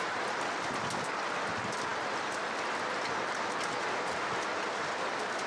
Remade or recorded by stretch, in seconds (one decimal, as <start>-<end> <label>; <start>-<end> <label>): 0.0-5.5 recorded